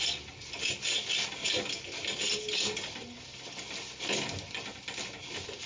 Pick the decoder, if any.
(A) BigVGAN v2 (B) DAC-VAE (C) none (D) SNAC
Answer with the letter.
C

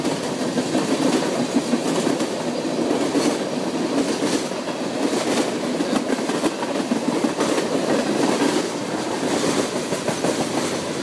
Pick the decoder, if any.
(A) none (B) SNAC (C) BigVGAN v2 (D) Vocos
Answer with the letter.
A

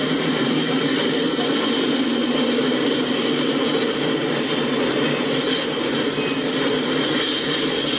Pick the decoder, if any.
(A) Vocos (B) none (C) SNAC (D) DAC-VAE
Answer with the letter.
B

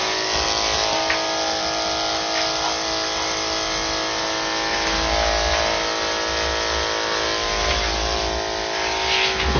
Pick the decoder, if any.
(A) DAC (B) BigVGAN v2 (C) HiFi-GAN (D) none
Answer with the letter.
D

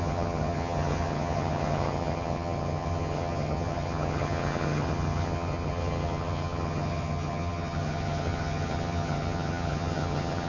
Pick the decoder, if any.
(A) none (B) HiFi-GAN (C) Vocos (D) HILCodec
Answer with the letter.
B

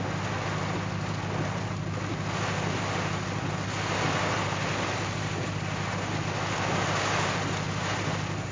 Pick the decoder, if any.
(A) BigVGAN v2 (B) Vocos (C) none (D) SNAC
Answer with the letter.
C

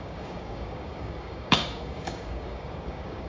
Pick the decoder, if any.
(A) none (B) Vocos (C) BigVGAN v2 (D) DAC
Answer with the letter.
D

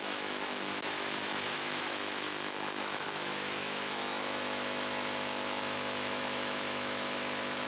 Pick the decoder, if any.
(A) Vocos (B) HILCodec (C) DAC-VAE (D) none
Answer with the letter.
C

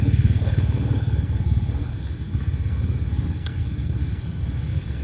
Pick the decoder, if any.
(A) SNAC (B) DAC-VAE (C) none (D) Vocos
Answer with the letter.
A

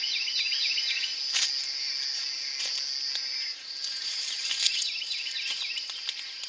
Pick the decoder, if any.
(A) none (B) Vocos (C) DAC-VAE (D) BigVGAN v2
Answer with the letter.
A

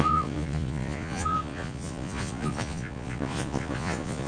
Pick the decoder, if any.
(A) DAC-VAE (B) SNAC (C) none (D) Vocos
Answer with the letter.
D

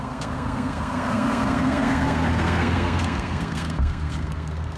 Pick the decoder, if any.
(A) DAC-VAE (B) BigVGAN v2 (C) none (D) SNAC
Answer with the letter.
D